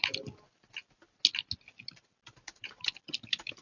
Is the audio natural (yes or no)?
yes